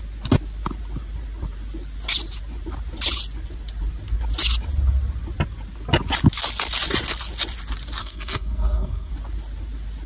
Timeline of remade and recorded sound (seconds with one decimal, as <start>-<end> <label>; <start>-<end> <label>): 0.0-8.0 recorded; 8.0-9.1 remade; 9.1-10.1 recorded